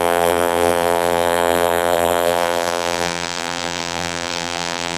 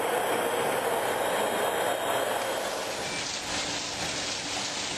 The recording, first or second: second